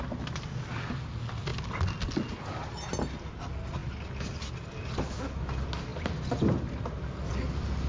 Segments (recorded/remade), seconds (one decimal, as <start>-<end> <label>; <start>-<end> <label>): 0.0-7.9 recorded